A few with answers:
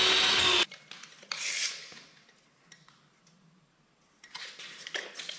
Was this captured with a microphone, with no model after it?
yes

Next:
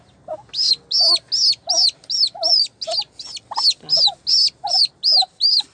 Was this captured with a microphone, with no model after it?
yes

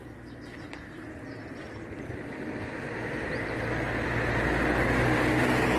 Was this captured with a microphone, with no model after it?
yes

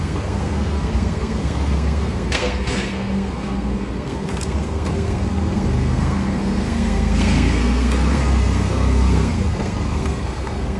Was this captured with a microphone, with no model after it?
no